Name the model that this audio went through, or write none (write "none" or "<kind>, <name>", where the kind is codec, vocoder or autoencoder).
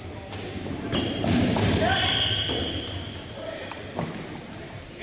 vocoder, BigVGAN v2